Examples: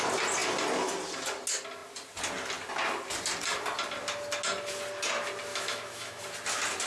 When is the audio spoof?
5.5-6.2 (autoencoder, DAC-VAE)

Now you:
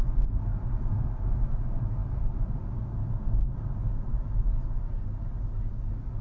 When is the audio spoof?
none

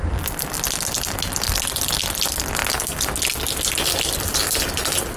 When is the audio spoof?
none

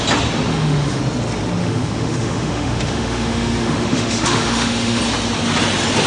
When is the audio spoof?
0.5-1.0 (autoencoder, DAC-VAE); 1.6-5.0

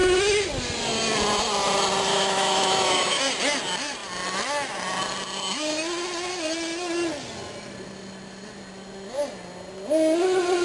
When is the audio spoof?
2.1-3.2 (autoencoder, DAC-VAE)

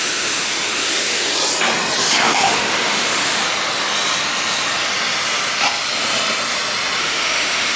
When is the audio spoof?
0.0-1.3 (autoencoder, DAC-VAE); 2.0-3.4; 7.0-7.8

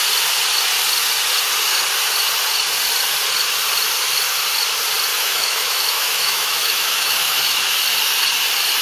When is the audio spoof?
5.1-7.7 (autoencoder, DAC-VAE)